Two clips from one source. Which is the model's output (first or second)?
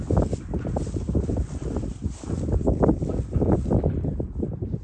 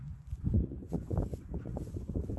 second